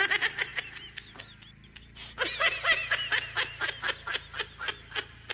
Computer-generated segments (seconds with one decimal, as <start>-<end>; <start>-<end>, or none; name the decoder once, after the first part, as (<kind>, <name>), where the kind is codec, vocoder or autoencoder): none